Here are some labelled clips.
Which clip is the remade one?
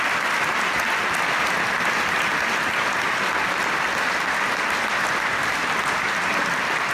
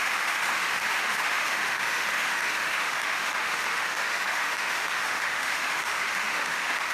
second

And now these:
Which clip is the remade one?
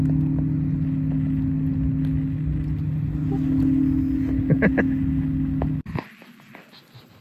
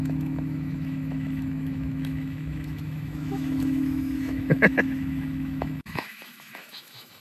second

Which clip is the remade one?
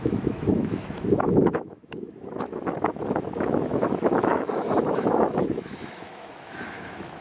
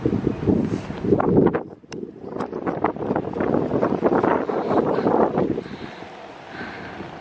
first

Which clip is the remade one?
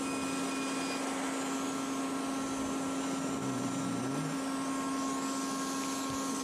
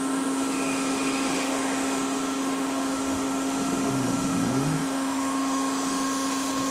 second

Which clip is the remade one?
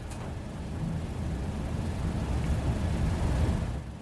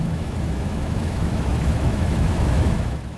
second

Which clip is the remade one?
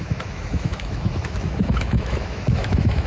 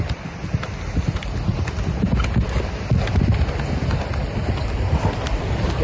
first